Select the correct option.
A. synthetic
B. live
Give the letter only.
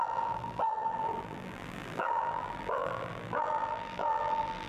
A